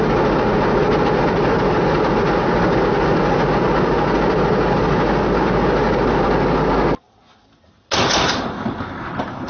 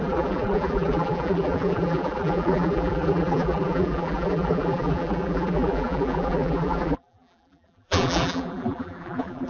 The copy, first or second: second